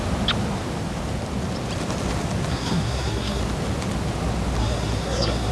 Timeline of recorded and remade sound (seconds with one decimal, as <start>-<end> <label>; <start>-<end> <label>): 0.0-2.5 recorded; 2.5-3.4 remade; 3.4-4.6 recorded; 4.6-5.5 remade

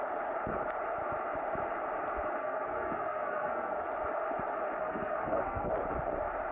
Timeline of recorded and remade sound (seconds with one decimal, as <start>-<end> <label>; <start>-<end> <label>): 0.0-2.4 recorded; 2.4-3.8 remade; 3.8-4.8 recorded; 4.8-5.7 remade; 5.7-6.5 recorded

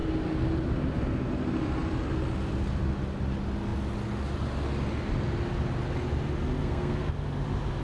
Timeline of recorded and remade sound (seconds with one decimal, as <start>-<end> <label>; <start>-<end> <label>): 0.0-6.6 recorded; 6.6-7.1 remade; 7.1-7.8 recorded